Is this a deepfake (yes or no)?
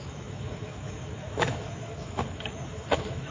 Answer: yes